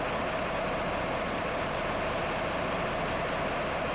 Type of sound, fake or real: real